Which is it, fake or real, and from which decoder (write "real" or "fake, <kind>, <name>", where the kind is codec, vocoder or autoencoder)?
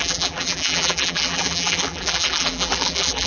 fake, vocoder, BigVGAN v2